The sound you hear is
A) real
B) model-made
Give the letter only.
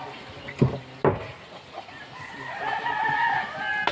A